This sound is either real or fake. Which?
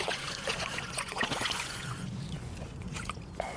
fake